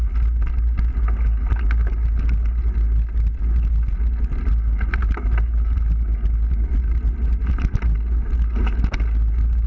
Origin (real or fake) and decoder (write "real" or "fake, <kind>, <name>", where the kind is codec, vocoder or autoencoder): real